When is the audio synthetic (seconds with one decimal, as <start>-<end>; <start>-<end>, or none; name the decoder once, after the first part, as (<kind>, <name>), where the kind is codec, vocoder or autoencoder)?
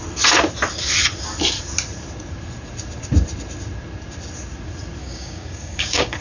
5.0-6.2 (codec, DAC)